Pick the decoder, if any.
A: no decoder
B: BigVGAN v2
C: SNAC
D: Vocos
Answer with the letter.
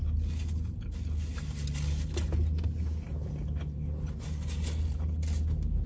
A